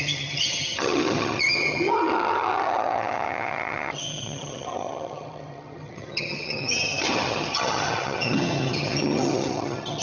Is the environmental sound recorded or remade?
remade